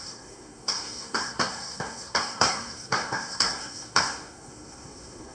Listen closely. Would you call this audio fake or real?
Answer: fake